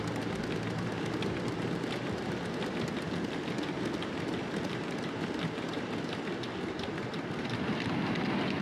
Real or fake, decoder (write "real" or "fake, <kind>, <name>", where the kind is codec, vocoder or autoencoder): real